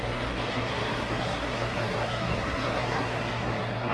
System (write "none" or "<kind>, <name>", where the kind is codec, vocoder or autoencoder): codec, SNAC